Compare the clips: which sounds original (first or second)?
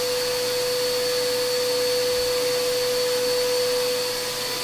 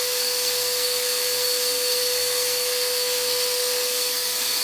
first